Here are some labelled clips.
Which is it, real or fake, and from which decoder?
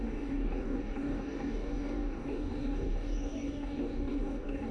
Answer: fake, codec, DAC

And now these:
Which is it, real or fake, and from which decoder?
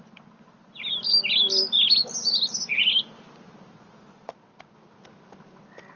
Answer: real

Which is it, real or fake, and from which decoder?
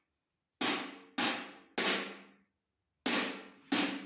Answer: real